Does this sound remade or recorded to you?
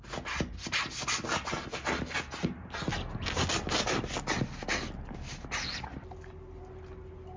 recorded